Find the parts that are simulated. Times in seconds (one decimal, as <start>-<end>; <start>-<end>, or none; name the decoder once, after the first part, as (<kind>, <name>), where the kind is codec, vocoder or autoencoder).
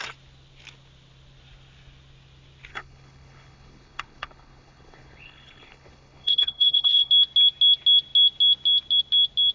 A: 2.7-7.1 (codec, HILCodec)